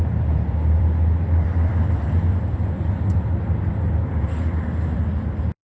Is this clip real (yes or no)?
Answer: no